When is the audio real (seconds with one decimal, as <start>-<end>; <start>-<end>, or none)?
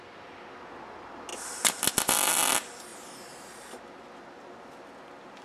0.0-5.4